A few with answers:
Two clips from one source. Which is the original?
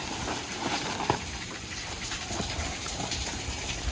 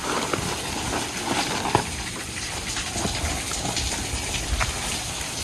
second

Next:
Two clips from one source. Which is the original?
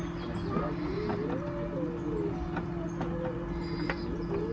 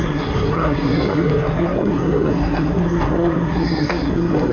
first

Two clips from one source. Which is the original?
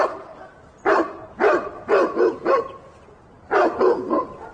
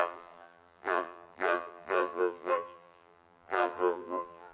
first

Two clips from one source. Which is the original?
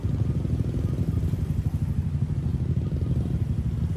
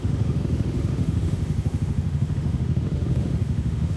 first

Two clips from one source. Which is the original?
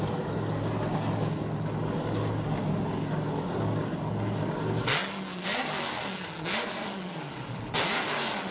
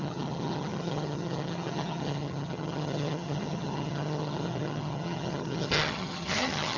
first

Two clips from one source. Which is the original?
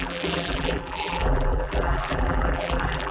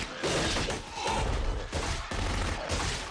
second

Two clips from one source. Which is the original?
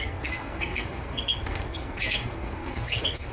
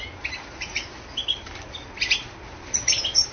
second